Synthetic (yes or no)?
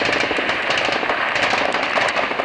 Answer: no